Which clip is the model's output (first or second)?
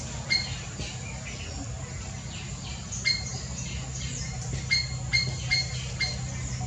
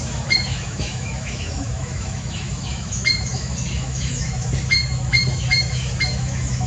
second